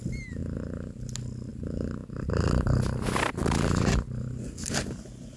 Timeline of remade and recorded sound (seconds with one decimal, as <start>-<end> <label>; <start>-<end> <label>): 0.0-5.4 recorded